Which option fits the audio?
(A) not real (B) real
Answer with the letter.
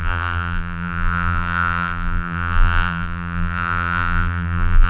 A